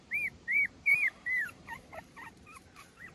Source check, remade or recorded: remade